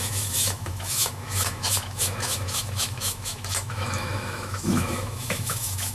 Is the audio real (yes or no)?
no